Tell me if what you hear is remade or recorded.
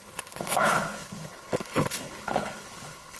remade